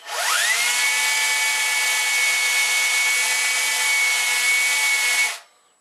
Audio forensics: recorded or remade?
recorded